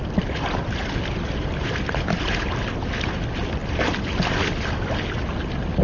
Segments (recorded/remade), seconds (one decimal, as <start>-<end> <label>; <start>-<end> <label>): 0.0-3.6 recorded; 3.6-4.6 remade; 4.6-5.8 recorded